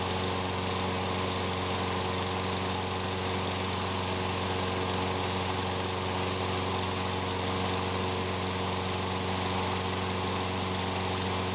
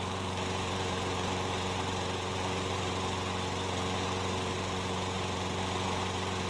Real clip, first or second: first